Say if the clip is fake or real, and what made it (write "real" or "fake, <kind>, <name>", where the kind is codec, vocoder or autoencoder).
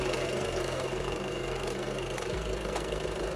fake, codec, SNAC